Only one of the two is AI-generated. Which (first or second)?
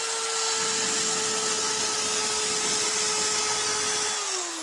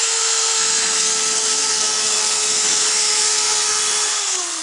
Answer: second